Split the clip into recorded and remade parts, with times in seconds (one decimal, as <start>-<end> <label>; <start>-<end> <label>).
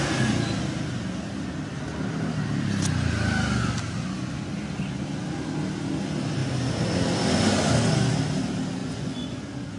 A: 0.0-8.8 recorded; 8.8-9.4 remade; 9.4-9.8 recorded